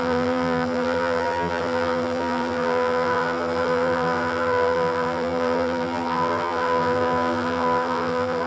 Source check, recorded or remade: remade